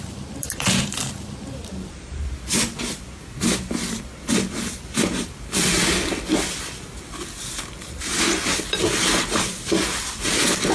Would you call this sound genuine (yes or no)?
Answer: no